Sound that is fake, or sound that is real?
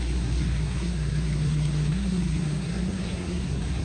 fake